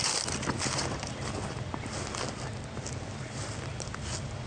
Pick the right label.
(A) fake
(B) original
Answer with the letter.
B